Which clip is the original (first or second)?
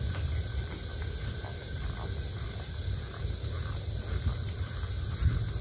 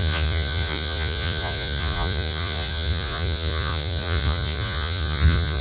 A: first